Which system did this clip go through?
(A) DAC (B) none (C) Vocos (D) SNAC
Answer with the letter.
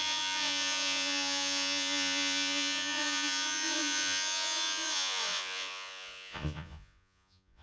C